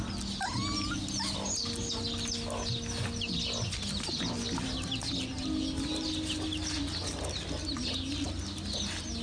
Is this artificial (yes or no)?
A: no